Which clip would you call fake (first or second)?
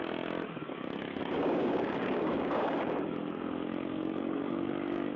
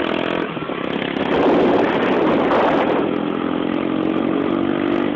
first